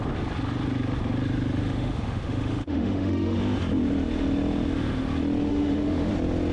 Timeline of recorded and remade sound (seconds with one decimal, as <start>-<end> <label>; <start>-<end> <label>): 0.0-1.6 recorded; 1.6-3.4 remade; 3.4-5.5 recorded; 5.5-6.1 remade; 6.1-6.5 recorded